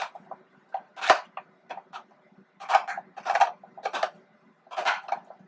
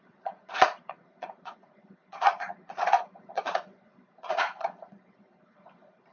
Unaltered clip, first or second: first